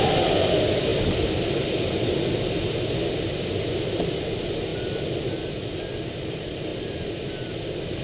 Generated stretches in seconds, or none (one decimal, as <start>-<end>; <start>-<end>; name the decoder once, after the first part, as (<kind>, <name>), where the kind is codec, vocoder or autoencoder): none